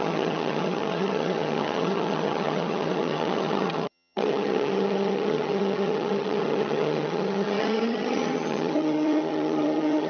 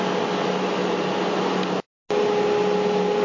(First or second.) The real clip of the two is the second